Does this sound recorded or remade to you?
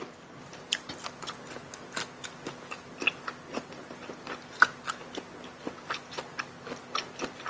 recorded